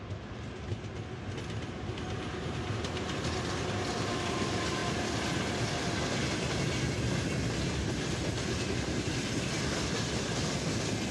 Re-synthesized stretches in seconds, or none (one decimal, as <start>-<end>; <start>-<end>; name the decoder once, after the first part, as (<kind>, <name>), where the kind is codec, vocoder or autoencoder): 4.8-5.5 (vocoder, BigVGAN v2)